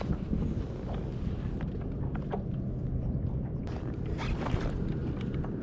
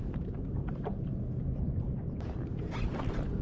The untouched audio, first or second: first